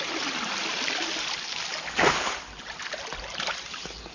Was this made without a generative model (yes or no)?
yes